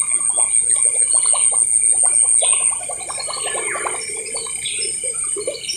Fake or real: real